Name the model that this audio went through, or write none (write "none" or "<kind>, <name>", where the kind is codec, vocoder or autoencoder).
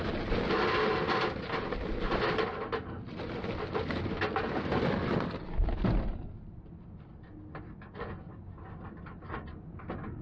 none